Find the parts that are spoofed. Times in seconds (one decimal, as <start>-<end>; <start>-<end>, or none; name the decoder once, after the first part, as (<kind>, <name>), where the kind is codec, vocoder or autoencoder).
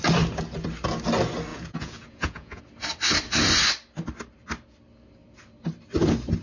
1.5-2.6 (vocoder, Vocos)